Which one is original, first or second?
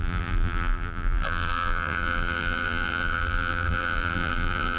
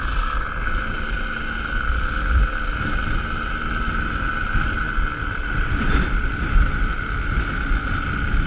second